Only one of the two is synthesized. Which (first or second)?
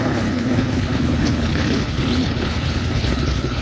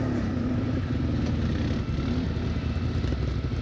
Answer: first